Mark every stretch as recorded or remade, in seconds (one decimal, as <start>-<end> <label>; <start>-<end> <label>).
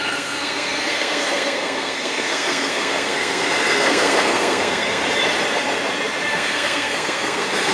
0.0-5.0 remade; 5.0-6.3 recorded; 6.3-7.7 remade